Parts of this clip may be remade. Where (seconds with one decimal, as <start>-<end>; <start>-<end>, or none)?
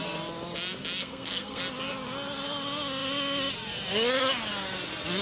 1.0-1.6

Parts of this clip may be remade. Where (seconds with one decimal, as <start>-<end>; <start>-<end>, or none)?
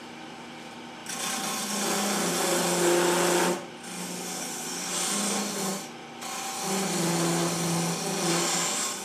4.4-4.9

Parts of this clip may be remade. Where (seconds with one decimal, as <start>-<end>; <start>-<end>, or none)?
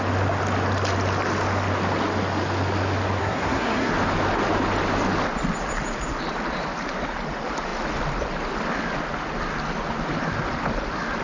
3.2-3.9